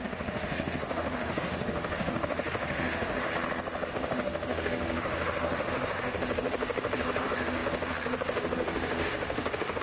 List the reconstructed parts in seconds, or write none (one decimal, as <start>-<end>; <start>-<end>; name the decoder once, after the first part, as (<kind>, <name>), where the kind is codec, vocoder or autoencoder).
0.0-3.3 (autoencoder, DAC-VAE); 3.9-9.8